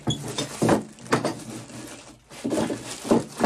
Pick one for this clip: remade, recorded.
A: recorded